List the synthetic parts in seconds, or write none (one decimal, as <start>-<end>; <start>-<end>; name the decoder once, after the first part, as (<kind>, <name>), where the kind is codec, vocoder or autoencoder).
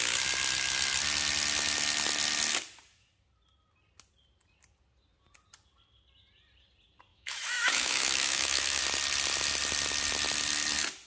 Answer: 7.1-8.8 (autoencoder, DAC-VAE)